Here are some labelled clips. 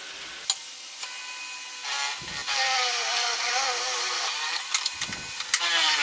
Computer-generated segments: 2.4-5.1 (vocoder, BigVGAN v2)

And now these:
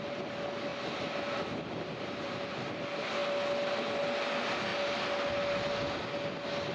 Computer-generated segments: 0.7-2.8 (vocoder, BigVGAN v2)

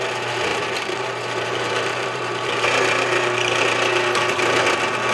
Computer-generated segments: 0.5-3.6 (vocoder, BigVGAN v2)

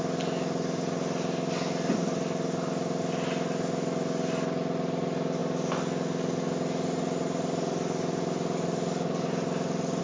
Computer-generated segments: none

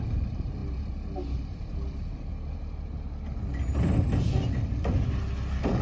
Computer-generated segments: 0.0-0.6 (vocoder, BigVGAN v2); 1.4-5.8